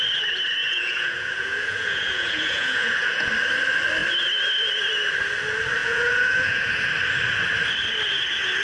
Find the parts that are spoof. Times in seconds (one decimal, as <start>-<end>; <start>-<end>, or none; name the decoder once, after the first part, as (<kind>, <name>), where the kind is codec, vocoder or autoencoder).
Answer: 0.6-3.3 (vocoder, Vocos); 5.8-6.8